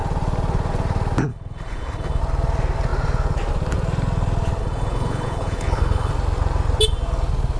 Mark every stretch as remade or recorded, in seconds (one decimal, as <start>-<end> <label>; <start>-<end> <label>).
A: 0.0-1.3 recorded; 1.3-2.2 remade; 2.2-4.6 recorded; 4.6-6.1 remade; 6.1-7.6 recorded